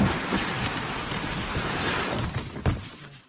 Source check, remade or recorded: recorded